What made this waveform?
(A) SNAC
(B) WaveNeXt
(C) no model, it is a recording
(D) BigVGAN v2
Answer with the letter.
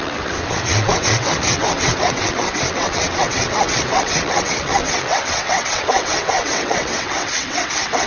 B